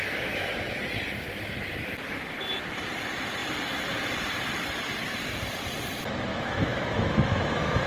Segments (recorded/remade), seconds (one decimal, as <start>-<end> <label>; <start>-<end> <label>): 0.0-0.8 remade; 0.8-6.3 recorded; 6.3-7.9 remade

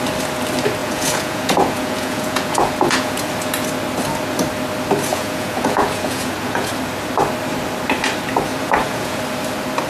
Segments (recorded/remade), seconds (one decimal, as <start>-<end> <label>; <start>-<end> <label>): 0.0-0.8 recorded; 0.8-3.3 remade; 3.3-5.1 recorded; 5.1-6.7 remade; 6.7-8.5 recorded; 8.5-9.2 remade; 9.2-9.9 recorded

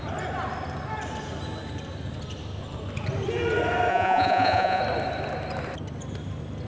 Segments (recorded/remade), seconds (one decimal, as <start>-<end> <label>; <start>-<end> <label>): 0.0-3.9 recorded; 3.9-4.8 remade; 4.8-6.7 recorded

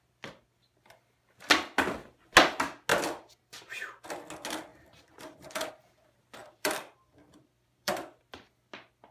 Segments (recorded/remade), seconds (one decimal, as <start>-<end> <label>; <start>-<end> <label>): 0.0-2.9 recorded; 2.9-3.7 remade; 3.7-4.7 recorded; 4.7-5.7 remade; 5.7-6.4 recorded; 6.4-8.2 remade; 8.2-9.1 recorded

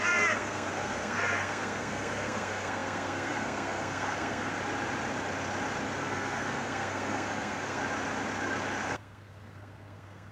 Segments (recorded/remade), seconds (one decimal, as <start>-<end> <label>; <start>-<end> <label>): 0.0-4.5 remade; 4.5-6.0 recorded; 6.0-7.8 remade; 7.8-8.9 recorded; 8.9-10.3 remade

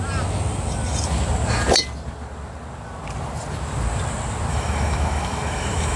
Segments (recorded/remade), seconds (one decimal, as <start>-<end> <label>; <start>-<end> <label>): 0.0-4.5 recorded; 4.5-6.0 remade

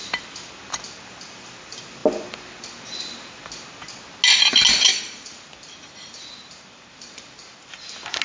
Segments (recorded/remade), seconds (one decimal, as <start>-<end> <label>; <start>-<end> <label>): 0.0-0.5 remade; 0.5-4.9 recorded; 4.9-8.2 remade

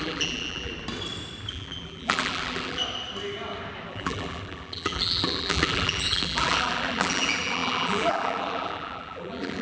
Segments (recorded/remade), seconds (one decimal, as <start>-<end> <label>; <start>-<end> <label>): 0.0-0.7 remade; 0.7-1.5 recorded; 1.5-2.8 remade; 2.8-3.9 recorded; 3.9-9.6 remade